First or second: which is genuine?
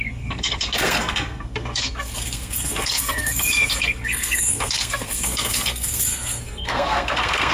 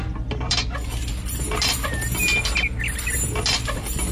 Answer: second